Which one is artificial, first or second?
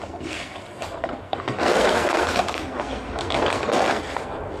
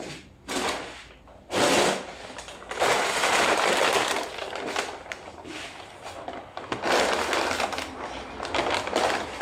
first